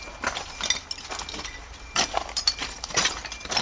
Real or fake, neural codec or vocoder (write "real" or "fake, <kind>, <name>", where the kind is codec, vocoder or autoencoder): real